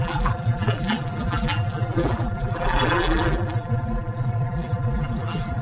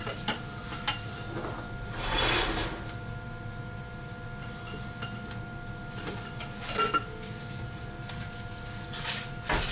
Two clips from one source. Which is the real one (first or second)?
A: second